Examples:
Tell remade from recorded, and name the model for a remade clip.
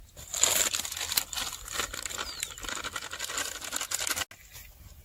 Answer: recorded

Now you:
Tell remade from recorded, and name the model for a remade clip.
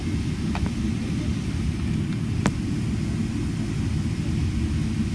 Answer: recorded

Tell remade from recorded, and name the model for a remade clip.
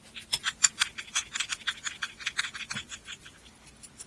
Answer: recorded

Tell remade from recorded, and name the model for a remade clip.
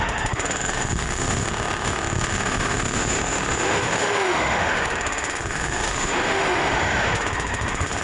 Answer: remade, autoencoder, DAC-VAE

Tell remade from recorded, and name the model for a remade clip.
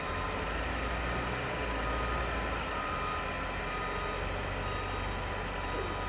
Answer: recorded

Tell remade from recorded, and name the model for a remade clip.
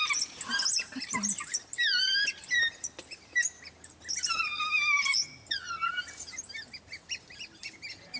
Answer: recorded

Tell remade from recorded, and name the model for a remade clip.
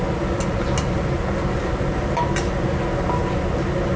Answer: recorded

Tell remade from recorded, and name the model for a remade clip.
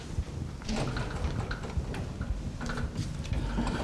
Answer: recorded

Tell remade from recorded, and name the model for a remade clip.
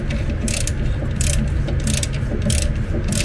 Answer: recorded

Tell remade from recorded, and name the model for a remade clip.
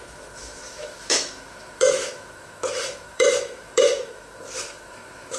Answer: remade, autoencoder, DAC-VAE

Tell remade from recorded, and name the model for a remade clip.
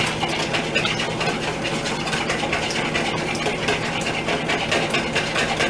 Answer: recorded